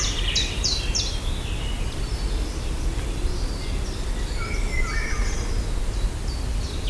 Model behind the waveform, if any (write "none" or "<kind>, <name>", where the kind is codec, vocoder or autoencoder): none